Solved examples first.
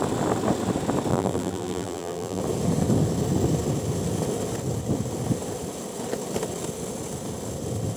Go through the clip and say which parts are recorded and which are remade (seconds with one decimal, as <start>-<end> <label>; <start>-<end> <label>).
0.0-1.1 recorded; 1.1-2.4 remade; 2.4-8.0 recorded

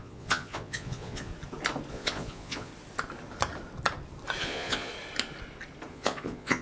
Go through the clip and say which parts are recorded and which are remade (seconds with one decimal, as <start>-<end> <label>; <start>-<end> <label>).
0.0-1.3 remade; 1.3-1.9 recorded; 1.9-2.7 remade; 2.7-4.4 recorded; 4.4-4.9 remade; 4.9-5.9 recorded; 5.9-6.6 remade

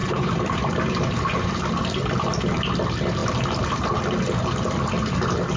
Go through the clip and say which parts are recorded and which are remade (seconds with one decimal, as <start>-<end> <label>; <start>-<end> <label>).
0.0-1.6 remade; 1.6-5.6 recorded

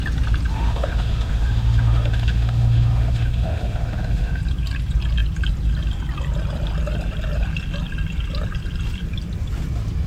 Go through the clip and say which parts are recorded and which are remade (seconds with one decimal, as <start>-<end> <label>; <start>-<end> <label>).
0.0-0.5 recorded; 0.5-4.4 remade; 4.4-10.1 recorded